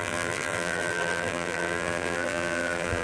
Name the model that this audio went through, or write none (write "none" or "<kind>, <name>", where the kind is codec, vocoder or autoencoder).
vocoder, BigVGAN v2